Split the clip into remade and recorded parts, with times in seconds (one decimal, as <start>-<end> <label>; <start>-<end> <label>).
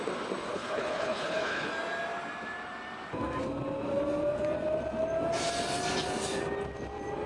0.0-0.5 recorded; 0.5-1.7 remade; 1.7-7.3 recorded